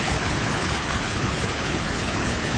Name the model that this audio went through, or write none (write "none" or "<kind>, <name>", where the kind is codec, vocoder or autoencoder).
codec, HILCodec